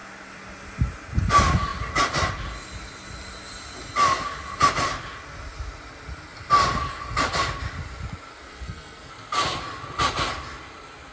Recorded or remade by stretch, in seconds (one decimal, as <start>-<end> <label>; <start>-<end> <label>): 0.0-8.3 recorded; 8.3-9.1 remade; 9.1-11.1 recorded

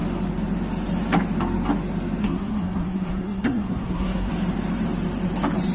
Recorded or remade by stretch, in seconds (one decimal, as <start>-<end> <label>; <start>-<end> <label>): 0.0-2.2 recorded; 2.2-4.3 remade; 4.3-5.7 recorded

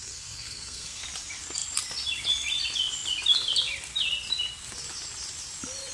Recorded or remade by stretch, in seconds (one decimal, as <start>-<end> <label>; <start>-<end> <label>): 0.0-1.0 remade; 1.0-5.9 recorded

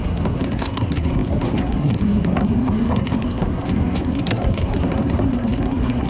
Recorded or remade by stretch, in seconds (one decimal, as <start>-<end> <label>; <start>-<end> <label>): 0.0-6.1 remade